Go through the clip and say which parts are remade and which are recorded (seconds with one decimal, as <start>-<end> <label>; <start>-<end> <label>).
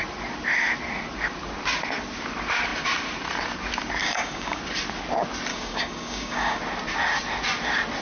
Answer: 0.0-4.0 recorded; 4.0-4.6 remade; 4.6-5.5 recorded; 5.5-6.6 remade; 6.6-8.0 recorded